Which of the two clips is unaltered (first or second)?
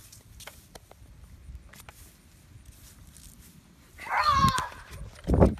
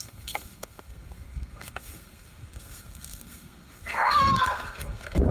first